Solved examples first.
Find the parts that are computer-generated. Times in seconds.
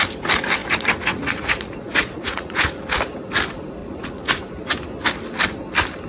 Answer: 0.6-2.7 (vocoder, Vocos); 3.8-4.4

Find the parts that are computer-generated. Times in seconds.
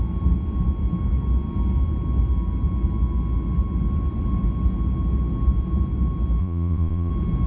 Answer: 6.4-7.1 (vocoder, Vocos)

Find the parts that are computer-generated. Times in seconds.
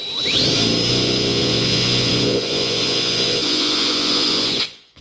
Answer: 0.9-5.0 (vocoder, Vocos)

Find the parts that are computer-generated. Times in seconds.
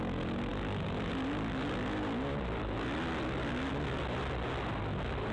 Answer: none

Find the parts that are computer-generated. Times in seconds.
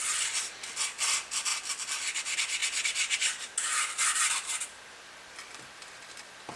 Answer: none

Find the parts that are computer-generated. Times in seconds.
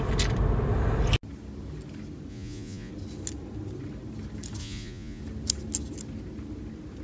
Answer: 2.3-2.9 (vocoder, Vocos); 4.6-5.2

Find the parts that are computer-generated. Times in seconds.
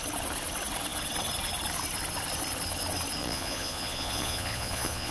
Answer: 3.2-5.1 (vocoder, Vocos)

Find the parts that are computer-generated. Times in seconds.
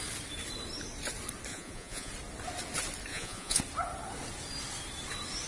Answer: 1.5-2.1 (vocoder, Vocos); 3.1-3.6